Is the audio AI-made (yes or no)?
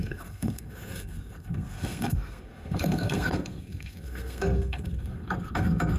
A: yes